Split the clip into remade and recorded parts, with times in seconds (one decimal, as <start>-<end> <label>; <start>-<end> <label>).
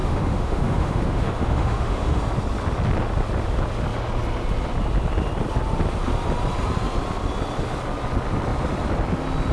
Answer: 0.0-2.2 remade; 2.2-9.5 recorded